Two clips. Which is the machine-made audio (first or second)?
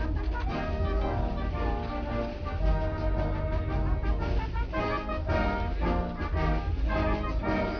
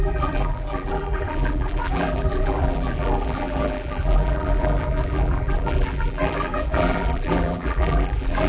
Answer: second